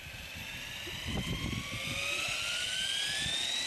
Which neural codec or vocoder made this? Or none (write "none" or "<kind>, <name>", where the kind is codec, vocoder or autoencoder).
none